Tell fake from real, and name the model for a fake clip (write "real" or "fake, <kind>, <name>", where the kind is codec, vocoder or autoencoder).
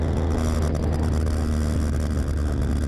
real